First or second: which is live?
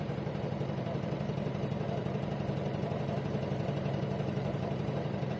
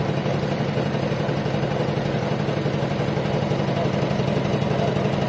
second